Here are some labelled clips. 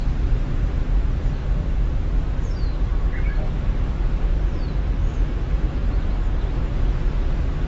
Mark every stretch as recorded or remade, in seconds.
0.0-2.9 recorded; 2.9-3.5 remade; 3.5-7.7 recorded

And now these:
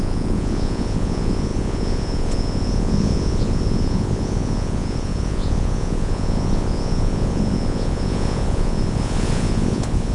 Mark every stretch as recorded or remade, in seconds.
0.0-10.1 remade

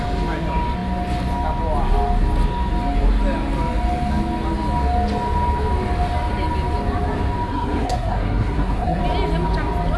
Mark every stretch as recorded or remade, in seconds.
0.0-7.5 recorded; 7.5-9.0 remade; 9.0-10.0 recorded

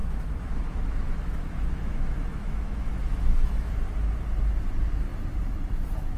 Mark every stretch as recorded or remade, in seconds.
0.0-3.7 remade; 3.7-6.2 recorded

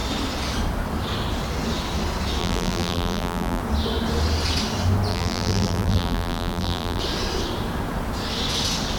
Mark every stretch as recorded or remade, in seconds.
0.0-2.4 recorded; 2.4-3.6 remade; 3.6-5.1 recorded; 5.1-7.0 remade; 7.0-9.0 recorded

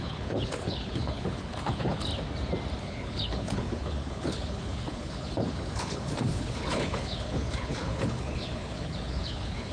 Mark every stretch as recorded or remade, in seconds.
0.0-2.1 remade; 2.1-2.8 recorded; 2.8-9.7 remade